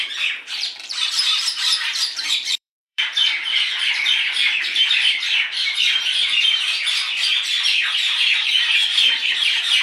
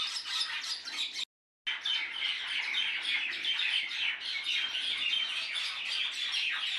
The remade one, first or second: first